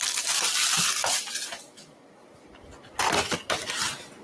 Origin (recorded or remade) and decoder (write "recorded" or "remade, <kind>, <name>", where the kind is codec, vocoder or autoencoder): recorded